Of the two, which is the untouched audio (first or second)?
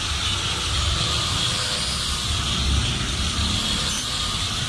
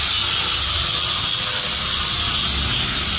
second